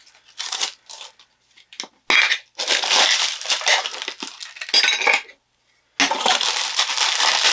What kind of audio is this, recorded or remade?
recorded